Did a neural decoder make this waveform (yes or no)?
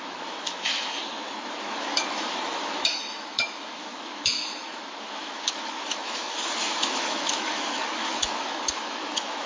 yes